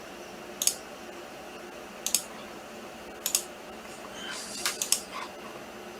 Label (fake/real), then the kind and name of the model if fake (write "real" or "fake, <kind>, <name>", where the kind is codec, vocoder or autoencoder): real